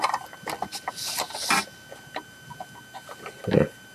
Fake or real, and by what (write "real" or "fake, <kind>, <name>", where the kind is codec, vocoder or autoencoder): real